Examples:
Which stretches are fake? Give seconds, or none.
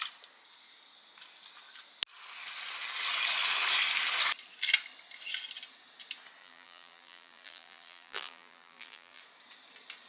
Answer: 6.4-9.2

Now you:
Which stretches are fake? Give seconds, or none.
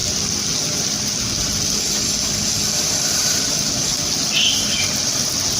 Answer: none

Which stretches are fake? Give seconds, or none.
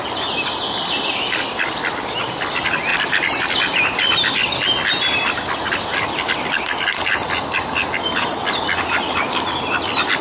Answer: none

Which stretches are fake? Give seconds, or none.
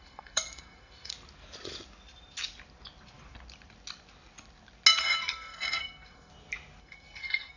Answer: 0.0-1.1; 5.2-6.3; 6.8-7.6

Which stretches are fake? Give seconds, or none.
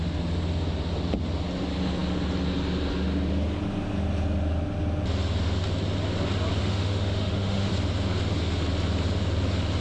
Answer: 6.6-7.7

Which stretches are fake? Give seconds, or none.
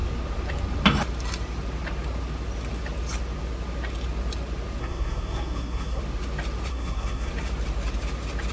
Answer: 4.8-6.0; 6.7-7.3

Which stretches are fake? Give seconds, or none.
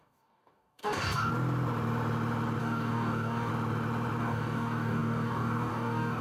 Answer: 0.0-1.3; 2.6-3.5; 4.2-6.2